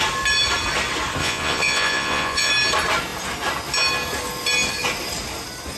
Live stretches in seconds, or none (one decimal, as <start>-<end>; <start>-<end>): 0.0-1.2; 2.5-5.8